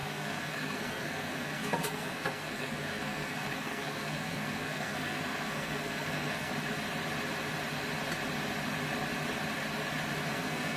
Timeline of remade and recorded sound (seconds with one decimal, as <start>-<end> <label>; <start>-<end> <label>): 0.0-6.5 remade; 6.5-10.3 recorded; 10.3-10.8 remade